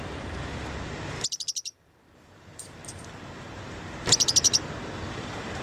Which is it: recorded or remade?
remade